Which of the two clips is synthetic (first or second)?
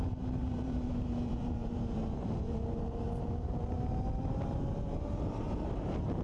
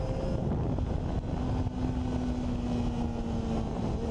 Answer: first